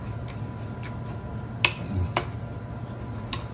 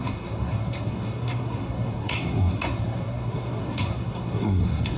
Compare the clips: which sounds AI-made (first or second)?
second